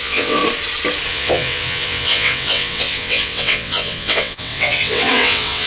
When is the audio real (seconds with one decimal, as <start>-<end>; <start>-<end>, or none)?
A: 0.4-1.1